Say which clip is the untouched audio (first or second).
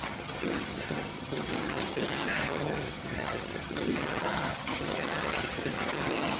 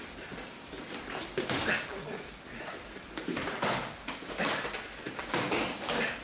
second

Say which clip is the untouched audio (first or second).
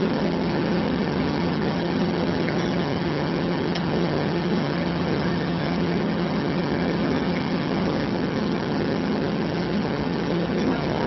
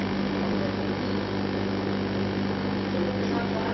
second